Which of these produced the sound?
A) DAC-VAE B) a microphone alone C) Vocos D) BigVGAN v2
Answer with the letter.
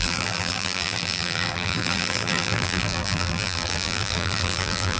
D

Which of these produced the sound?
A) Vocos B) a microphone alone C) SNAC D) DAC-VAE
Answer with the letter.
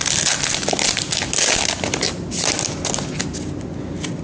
B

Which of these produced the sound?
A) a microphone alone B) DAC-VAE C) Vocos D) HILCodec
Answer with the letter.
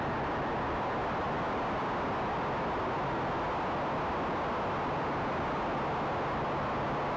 A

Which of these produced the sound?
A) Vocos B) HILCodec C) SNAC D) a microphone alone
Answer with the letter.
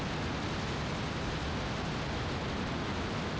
D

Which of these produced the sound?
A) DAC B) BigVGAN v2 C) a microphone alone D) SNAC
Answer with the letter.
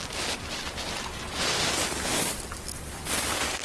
C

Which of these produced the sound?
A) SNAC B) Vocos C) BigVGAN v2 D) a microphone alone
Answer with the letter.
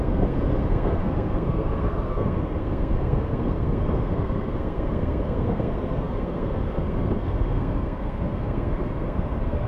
A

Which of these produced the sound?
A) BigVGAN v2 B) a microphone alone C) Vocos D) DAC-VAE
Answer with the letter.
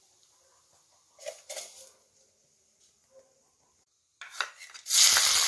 B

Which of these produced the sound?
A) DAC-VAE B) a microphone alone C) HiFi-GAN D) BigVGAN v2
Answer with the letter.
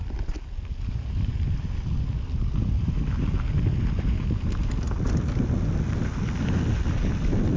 B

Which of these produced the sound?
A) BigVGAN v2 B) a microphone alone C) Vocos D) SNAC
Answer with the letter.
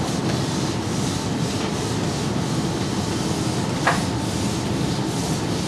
B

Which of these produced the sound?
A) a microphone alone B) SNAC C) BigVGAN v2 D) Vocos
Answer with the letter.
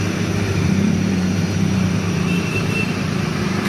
C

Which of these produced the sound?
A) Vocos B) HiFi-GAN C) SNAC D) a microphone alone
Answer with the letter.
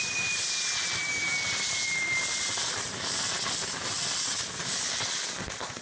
D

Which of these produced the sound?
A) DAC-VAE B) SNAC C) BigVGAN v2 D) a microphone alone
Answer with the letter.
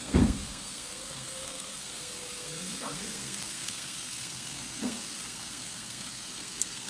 B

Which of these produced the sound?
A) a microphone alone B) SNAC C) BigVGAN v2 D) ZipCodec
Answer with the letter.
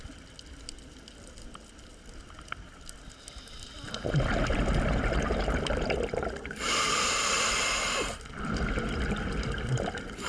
A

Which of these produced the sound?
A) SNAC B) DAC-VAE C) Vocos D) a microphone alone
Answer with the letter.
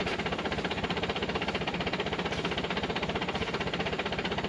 D